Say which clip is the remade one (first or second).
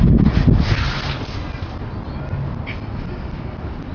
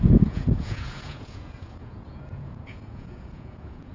second